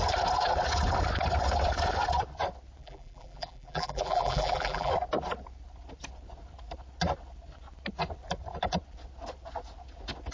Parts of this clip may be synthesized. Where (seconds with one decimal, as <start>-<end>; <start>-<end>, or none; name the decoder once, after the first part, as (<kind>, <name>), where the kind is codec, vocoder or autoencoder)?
2.8-4.9 (vocoder, BigVGAN v2)